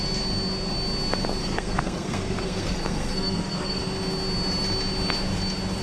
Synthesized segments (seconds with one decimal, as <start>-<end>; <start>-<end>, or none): 1.4-3.8